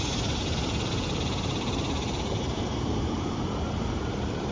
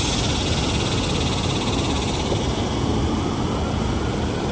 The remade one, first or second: first